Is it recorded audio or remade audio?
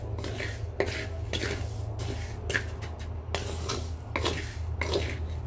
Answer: recorded